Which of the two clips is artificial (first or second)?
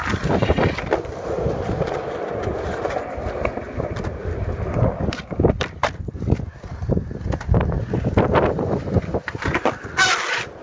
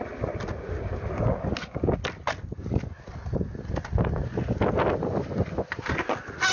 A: first